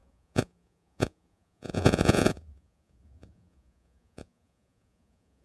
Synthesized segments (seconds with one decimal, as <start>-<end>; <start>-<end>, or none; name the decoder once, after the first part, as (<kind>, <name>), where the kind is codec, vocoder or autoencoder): 0.0-5.4 (vocoder, Vocos)